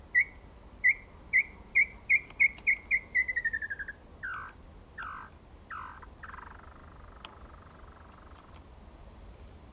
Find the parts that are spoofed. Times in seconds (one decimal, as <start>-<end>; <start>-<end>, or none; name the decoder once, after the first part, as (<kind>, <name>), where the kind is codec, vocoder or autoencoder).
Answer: none